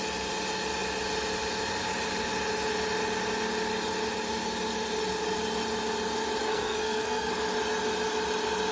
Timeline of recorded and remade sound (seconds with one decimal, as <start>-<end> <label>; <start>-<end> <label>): 0.0-6.4 recorded; 6.4-7.3 remade; 7.3-8.7 recorded